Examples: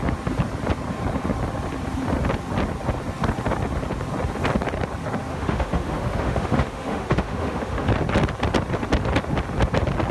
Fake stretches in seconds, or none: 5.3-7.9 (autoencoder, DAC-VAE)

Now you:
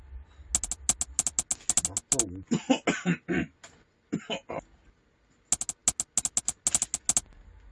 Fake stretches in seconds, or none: none

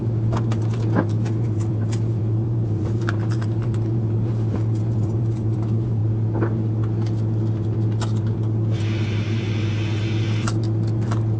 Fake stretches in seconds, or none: 0.0-6.0 (vocoder, BigVGAN v2)

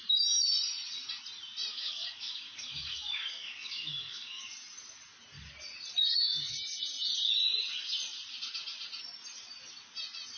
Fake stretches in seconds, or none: 1.7-4.4 (codec, DAC)